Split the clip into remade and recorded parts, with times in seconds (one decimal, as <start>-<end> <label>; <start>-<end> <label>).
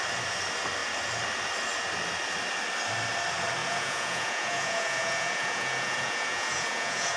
0.0-3.6 recorded; 3.6-7.2 remade